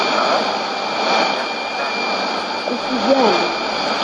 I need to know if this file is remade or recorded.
recorded